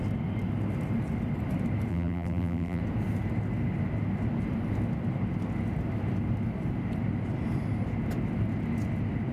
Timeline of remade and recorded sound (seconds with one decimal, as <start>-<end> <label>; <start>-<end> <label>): 0.0-1.9 recorded; 1.9-2.8 remade; 2.8-9.3 recorded